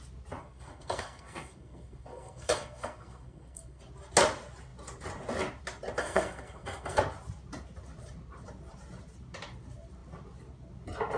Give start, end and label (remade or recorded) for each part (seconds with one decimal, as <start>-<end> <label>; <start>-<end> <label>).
0.0-0.4 recorded; 0.4-3.8 remade; 3.8-6.0 recorded; 6.0-7.0 remade; 7.0-11.2 recorded